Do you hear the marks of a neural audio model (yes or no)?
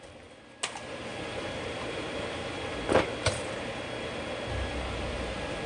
no